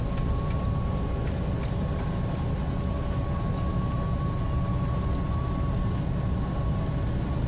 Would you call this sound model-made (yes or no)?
no